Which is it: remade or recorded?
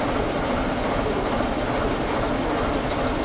recorded